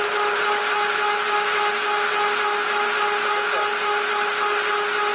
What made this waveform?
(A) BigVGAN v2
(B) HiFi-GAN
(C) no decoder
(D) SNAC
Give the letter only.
C